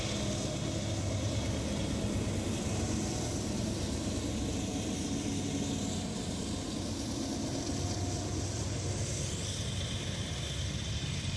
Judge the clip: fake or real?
real